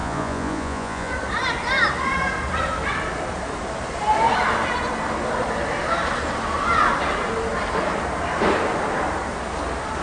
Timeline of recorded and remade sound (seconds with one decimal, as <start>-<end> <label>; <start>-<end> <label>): 0.0-1.1 remade; 1.1-10.0 recorded